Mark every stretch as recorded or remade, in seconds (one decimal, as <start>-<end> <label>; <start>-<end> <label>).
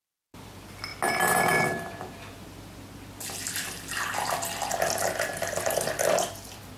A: 0.0-6.8 recorded